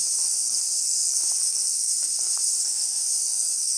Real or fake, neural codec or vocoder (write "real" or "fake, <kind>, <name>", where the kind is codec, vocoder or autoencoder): fake, codec, SNAC